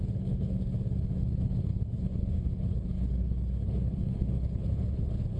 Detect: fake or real fake